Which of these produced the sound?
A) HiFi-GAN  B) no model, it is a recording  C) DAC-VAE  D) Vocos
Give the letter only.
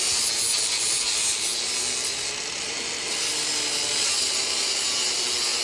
B